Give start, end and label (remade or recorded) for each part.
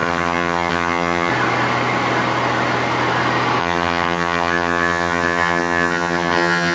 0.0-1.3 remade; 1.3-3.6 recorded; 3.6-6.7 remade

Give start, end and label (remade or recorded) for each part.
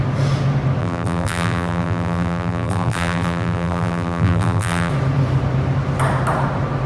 0.0-0.8 recorded; 0.8-4.9 remade; 4.9-6.9 recorded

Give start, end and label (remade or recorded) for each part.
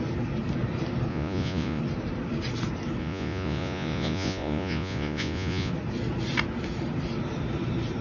0.0-1.1 recorded; 1.1-1.8 remade; 1.8-3.0 recorded; 3.0-5.7 remade; 5.7-8.0 recorded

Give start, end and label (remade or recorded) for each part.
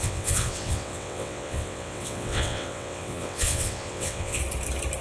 0.0-4.4 remade; 4.4-5.0 recorded